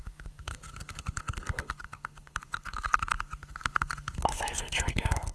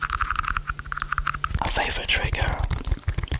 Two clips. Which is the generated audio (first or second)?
first